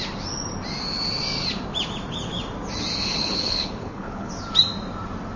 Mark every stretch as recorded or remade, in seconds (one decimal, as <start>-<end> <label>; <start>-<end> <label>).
0.0-2.9 recorded; 2.9-4.3 remade; 4.3-5.4 recorded